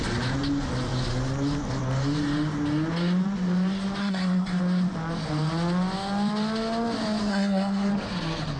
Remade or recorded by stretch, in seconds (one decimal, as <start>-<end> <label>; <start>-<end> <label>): 0.0-4.0 recorded; 4.0-4.6 remade; 4.6-7.3 recorded; 7.3-7.9 remade; 7.9-8.6 recorded